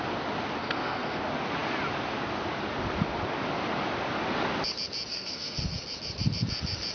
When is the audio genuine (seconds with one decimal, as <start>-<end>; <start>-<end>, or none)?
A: 0.0-0.6; 1.2-5.1; 5.6-6.9